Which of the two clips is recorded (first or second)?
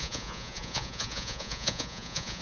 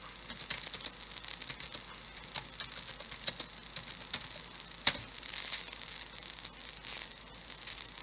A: second